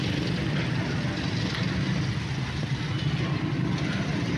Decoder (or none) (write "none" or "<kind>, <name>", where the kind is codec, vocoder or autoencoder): none